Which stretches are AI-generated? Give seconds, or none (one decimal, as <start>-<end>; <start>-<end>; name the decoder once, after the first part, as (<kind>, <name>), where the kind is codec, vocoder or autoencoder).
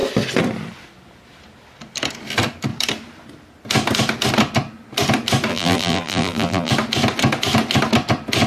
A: 5.5-6.7 (vocoder, BigVGAN v2)